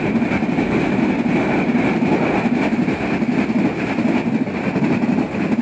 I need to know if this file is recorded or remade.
recorded